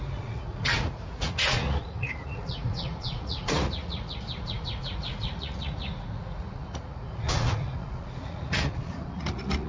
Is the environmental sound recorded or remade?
remade